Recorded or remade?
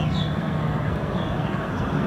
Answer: remade